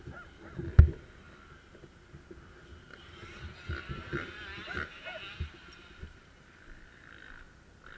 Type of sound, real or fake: real